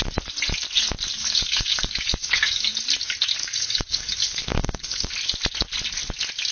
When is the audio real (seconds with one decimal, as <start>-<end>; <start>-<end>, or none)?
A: 0.0-1.1; 2.7-3.4; 5.1-6.5